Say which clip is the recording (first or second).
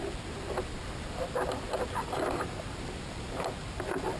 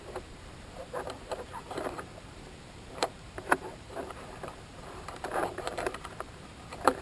first